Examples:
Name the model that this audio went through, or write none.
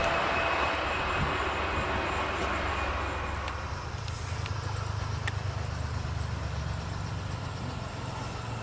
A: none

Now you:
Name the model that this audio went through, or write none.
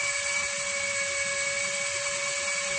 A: none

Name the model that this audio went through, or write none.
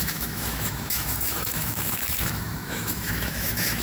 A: autoencoder, DAC-VAE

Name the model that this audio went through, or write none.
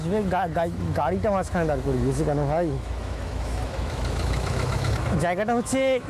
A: autoencoder, DAC-VAE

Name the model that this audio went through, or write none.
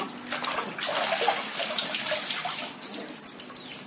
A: none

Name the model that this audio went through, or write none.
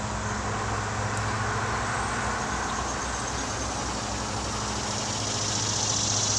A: none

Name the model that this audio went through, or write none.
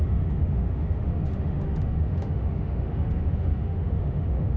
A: autoencoder, DAC-VAE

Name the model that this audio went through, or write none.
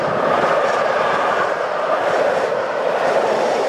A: none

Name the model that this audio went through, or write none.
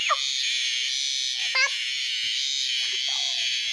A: none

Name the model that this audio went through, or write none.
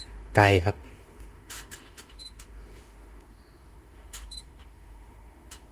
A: autoencoder, DAC-VAE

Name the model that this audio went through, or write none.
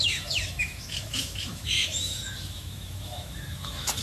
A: autoencoder, DAC-VAE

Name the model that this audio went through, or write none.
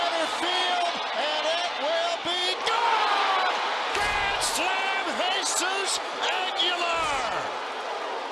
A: none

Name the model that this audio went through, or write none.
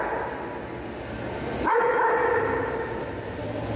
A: none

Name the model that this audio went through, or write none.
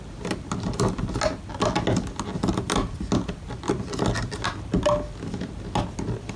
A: none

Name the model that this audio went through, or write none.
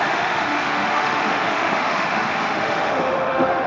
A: autoencoder, DAC-VAE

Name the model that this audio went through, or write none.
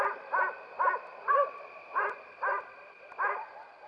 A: none